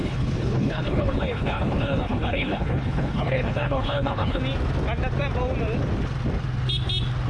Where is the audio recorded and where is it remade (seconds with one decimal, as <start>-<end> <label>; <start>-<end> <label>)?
0.0-4.4 remade; 4.4-7.3 recorded